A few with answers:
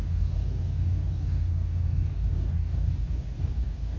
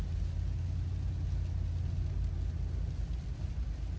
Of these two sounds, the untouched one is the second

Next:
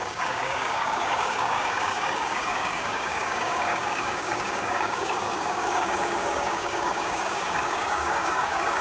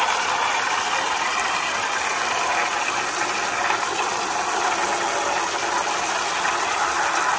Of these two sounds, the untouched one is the second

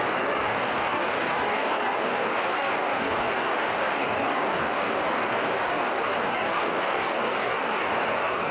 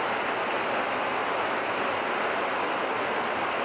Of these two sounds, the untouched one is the second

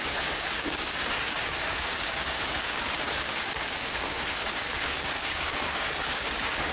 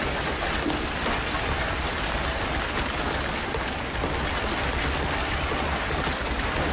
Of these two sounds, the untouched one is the second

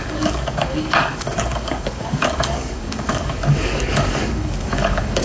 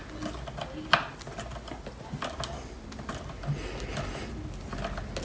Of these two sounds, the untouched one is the second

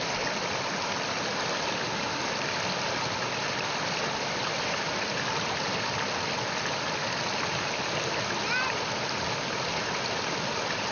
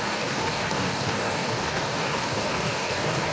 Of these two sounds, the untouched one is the first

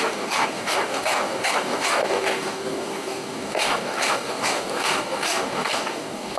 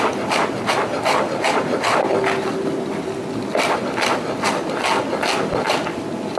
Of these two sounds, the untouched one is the second